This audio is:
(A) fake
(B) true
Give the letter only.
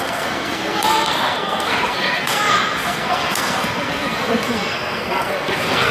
A